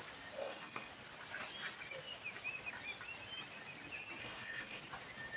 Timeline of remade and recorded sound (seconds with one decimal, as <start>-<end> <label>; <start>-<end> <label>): 0.0-0.4 recorded; 0.4-0.9 remade; 0.9-4.2 recorded; 4.2-4.8 remade; 4.8-5.4 recorded